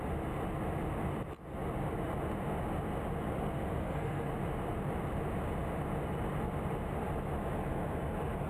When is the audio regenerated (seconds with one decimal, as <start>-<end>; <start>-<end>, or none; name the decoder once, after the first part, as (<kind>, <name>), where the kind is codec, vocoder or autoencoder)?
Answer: 3.8-4.3 (codec, SNAC)